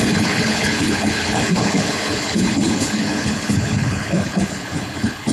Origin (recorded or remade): remade